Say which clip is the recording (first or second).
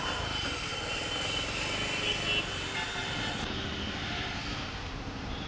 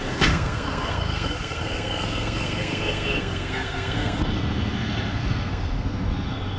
first